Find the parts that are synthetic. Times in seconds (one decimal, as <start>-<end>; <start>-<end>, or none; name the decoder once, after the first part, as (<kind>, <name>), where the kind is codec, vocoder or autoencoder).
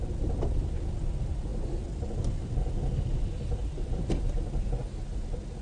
none